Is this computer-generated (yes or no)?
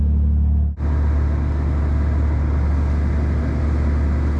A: no